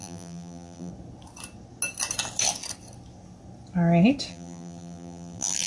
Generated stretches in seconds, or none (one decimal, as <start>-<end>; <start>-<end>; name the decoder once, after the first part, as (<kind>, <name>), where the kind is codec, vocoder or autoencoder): 0.0-0.9 (vocoder, BigVGAN v2); 4.3-5.7